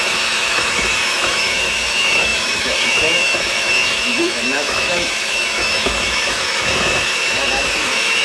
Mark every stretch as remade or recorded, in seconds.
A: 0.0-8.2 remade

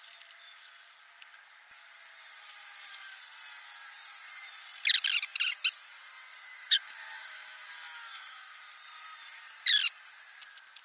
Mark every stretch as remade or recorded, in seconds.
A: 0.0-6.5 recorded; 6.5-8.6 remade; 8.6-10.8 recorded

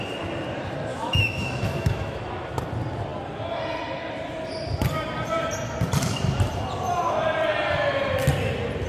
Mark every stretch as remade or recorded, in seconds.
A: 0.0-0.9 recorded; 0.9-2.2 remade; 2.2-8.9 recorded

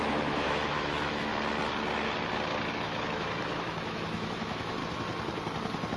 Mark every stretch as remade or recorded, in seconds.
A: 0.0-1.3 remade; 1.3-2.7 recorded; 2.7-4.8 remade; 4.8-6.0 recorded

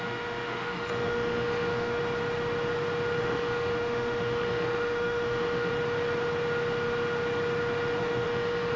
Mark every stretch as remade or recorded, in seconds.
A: 0.0-2.0 remade; 2.0-3.2 recorded; 3.2-5.7 remade; 5.7-8.0 recorded; 8.0-8.8 remade

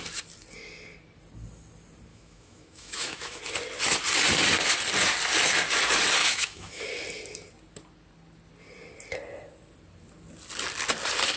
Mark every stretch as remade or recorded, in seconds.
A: 0.0-2.1 recorded; 2.1-3.4 remade; 3.4-6.2 recorded; 6.2-6.8 remade; 6.8-11.4 recorded